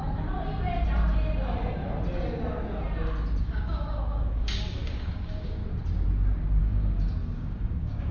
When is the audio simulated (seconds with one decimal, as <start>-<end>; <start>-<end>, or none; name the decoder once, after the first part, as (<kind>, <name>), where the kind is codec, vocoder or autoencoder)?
3.4-5.6 (codec, DAC); 6.6-8.1